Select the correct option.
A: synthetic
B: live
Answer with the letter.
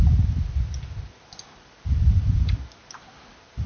B